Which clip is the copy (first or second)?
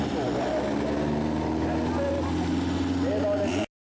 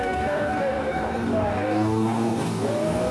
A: second